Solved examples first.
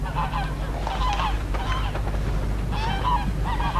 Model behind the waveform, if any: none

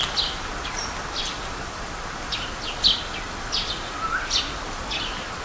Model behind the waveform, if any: none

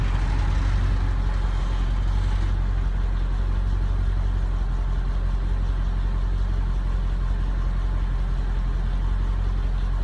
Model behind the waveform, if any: none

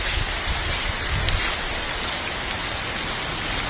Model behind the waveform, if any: none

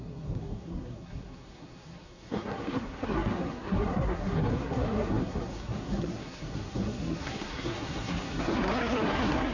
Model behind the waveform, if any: codec, SNAC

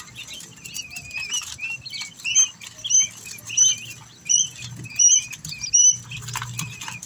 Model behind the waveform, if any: none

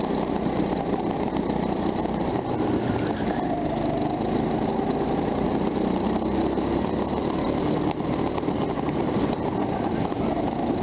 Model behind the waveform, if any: none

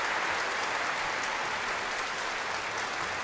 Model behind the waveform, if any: none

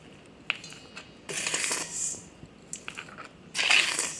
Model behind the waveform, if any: none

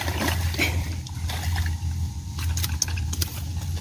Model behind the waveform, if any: none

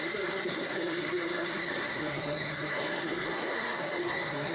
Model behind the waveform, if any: codec, SNAC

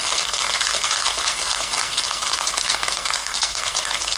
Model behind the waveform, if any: codec, SNAC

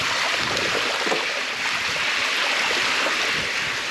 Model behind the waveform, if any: none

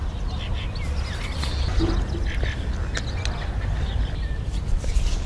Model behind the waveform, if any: none